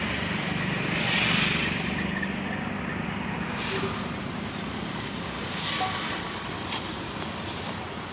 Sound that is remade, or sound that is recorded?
recorded